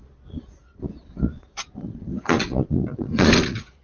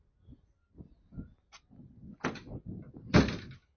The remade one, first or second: first